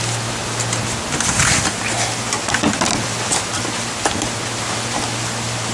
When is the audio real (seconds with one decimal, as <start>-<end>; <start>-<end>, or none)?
0.0-5.7